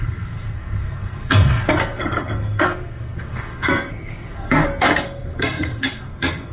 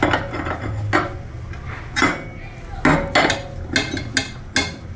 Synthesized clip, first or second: first